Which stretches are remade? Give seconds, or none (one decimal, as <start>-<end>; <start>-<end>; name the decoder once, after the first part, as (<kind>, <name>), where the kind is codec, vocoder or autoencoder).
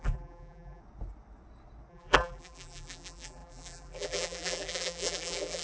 0.0-0.8 (vocoder, BigVGAN v2); 1.9-5.6